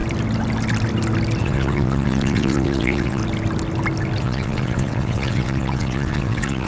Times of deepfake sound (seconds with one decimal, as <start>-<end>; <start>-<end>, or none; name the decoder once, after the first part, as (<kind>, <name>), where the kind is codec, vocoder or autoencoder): 1.4-3.2 (vocoder, WaveNeXt); 4.2-6.7